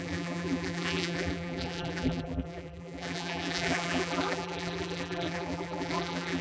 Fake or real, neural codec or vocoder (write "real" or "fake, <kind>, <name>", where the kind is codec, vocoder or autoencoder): fake, vocoder, BigVGAN v2